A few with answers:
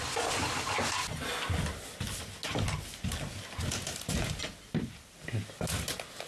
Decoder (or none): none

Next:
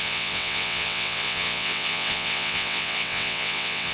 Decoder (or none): vocoder, WaveNeXt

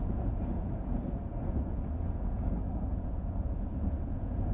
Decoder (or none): vocoder, Vocos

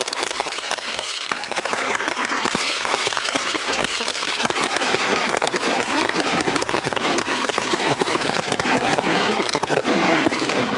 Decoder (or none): codec, SNAC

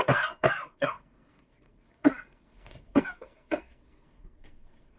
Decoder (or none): codec, SNAC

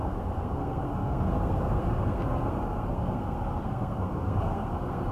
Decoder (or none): codec, SNAC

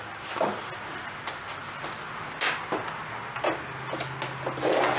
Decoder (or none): none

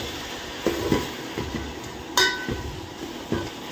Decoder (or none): none